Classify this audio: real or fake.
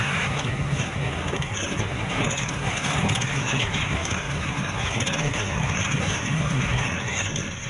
fake